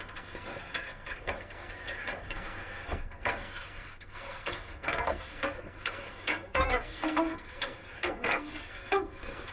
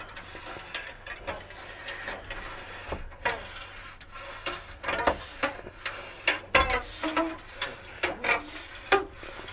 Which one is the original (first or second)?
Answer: second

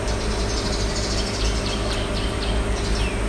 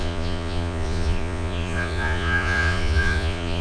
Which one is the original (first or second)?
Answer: first